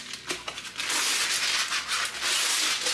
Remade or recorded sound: recorded